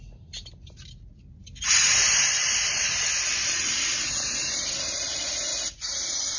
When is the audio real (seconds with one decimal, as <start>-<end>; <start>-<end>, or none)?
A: 0.0-1.4; 2.9-3.4; 4.0-6.4